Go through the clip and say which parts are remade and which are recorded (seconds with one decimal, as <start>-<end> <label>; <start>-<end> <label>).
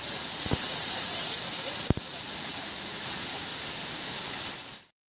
0.0-1.2 remade; 1.2-2.1 recorded; 2.1-3.5 remade; 3.5-5.1 recorded